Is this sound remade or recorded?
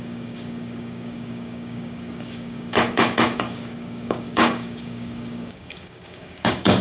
remade